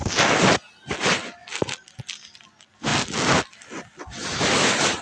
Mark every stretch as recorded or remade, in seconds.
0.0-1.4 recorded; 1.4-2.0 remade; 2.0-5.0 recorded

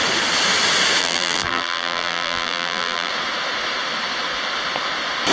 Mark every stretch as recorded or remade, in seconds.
0.0-1.0 recorded; 1.0-3.1 remade; 3.1-5.3 recorded

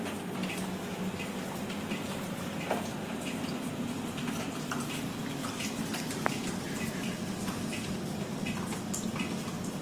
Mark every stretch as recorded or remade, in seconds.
0.0-9.8 recorded

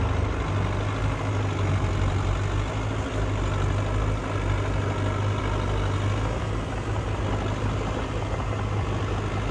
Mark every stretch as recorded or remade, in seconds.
0.0-9.5 recorded

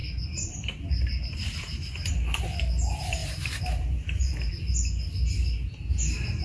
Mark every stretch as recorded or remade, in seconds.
0.0-2.1 remade; 2.1-3.2 recorded; 3.2-4.5 remade; 4.5-6.4 recorded